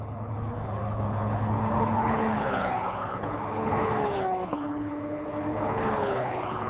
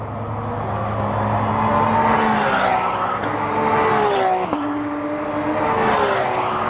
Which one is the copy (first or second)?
first